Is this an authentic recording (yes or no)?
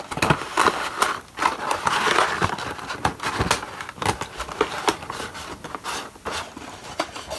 yes